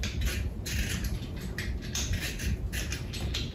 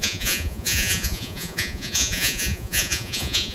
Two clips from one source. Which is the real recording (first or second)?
first